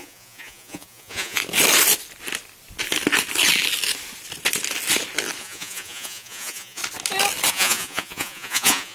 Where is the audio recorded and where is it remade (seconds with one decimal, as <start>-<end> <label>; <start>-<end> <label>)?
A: 0.0-1.4 remade; 1.4-5.4 recorded; 5.4-6.8 remade; 6.8-7.5 recorded; 7.5-8.9 remade